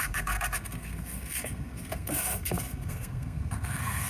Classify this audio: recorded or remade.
remade